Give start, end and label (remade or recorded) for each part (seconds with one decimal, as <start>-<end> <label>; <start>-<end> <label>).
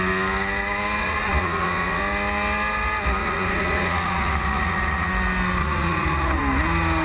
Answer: 0.0-1.0 recorded; 1.0-2.0 remade; 2.0-3.2 recorded; 3.2-5.1 remade; 5.1-5.6 recorded; 5.6-6.4 remade; 6.4-7.0 recorded